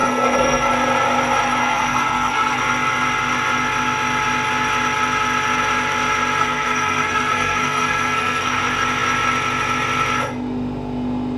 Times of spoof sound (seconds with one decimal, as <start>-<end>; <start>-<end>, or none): 0.0-0.7; 1.6-2.6; 6.4-8.6